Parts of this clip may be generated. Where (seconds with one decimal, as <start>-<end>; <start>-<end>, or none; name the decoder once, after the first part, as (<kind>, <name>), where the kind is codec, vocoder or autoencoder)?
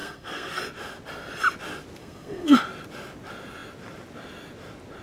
0.0-0.6 (codec, SNAC); 2.0-2.6